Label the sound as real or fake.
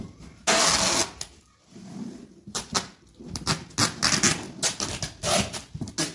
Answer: real